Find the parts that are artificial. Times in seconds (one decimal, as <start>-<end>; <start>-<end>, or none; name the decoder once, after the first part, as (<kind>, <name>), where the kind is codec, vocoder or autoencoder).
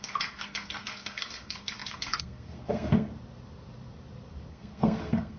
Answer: 0.0-3.1 (codec, SNAC); 4.5-5.4